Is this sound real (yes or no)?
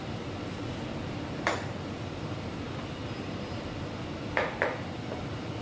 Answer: yes